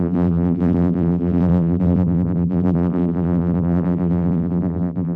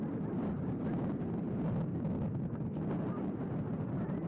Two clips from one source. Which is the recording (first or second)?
second